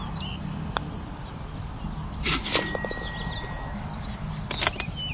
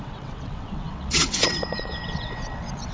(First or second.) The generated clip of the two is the second